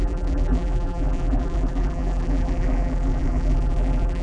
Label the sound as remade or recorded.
remade